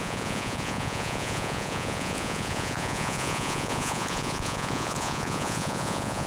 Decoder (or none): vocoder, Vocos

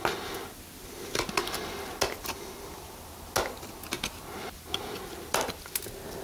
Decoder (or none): none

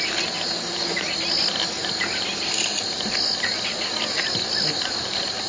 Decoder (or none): none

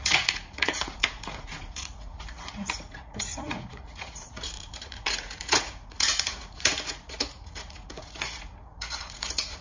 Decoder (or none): vocoder, Vocos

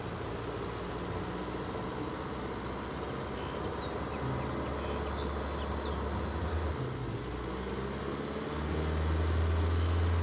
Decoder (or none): none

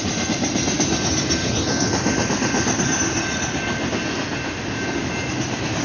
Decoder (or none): none